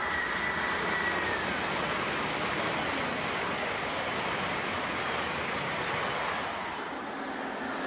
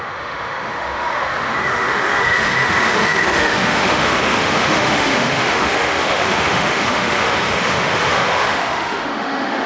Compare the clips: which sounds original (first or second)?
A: first